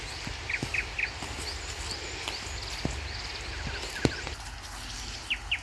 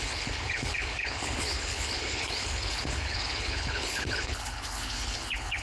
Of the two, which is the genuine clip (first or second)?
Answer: first